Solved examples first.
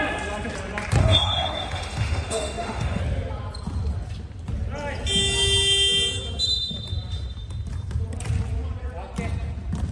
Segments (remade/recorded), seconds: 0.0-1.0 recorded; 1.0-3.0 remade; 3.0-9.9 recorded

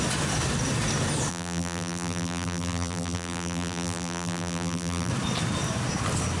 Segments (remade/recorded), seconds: 0.0-1.3 recorded; 1.3-5.1 remade; 5.1-6.4 recorded

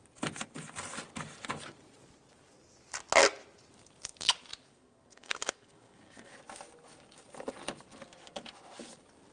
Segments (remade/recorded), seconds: 0.0-4.7 recorded; 4.7-6.3 remade; 6.3-9.3 recorded

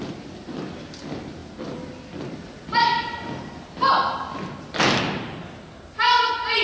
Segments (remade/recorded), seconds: 0.0-6.6 recorded

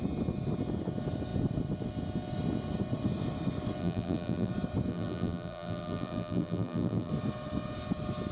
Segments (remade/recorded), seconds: 0.0-3.8 recorded; 3.8-4.5 remade; 4.5-4.9 recorded; 4.9-7.1 remade; 7.1-8.3 recorded

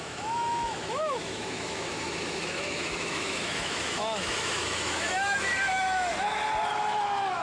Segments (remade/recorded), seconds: 0.0-6.1 remade; 6.1-6.7 recorded; 6.7-7.4 remade

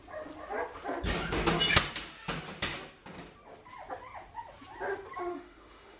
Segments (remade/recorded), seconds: 0.0-5.3 recorded; 5.3-6.0 remade

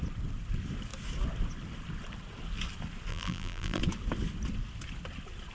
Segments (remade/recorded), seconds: 0.0-3.1 recorded; 3.1-3.8 remade; 3.8-5.5 recorded